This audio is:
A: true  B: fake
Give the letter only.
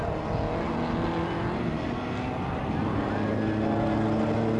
A